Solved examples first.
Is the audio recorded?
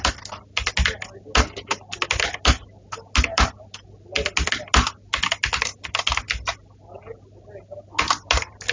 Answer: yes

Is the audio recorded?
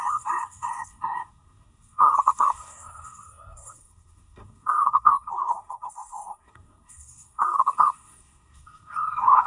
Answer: no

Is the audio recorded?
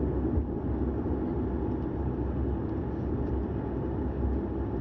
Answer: yes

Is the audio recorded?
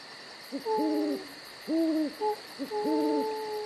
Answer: yes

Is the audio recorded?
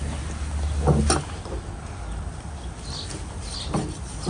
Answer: yes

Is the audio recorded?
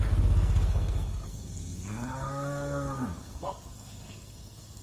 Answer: no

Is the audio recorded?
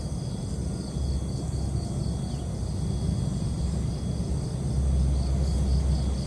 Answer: yes